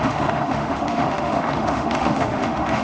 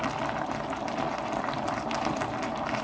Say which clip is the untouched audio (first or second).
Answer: second